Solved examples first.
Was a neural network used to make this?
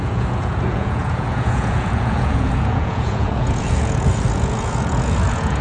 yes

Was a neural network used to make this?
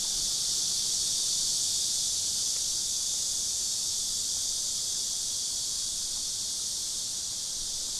no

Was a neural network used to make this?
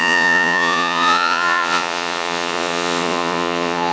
yes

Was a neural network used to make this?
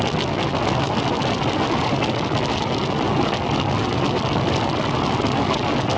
no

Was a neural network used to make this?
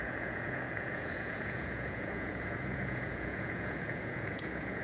yes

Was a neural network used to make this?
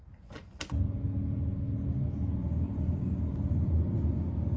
no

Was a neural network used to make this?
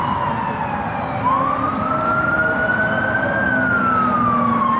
no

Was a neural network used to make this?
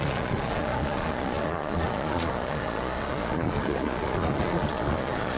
yes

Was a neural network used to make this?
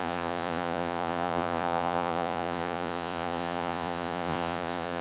yes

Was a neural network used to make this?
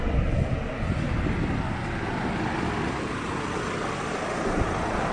no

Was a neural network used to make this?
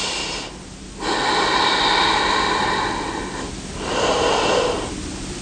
no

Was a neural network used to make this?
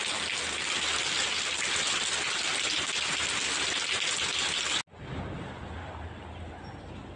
no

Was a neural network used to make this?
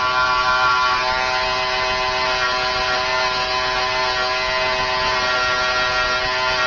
no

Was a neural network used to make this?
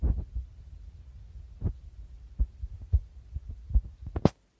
no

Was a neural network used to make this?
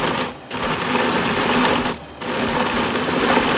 no